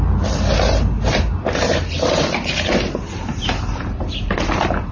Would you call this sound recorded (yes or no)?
yes